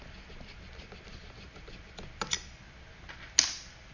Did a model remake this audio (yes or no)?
no